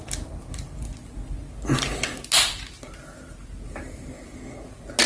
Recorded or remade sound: recorded